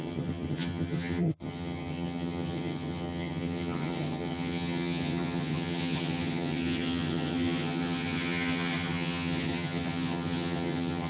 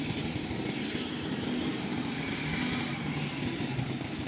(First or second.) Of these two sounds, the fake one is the first